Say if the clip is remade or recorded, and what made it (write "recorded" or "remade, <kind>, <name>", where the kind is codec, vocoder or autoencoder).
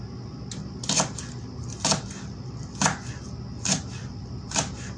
recorded